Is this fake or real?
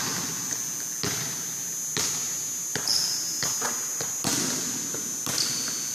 real